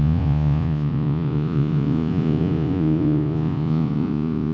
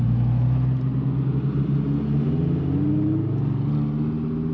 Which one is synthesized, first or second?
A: first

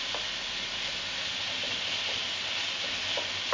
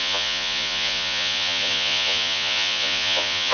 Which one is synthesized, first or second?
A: second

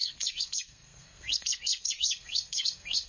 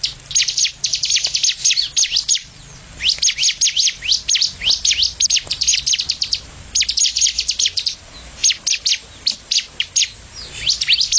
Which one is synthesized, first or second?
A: first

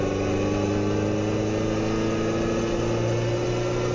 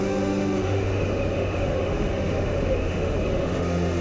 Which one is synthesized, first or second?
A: second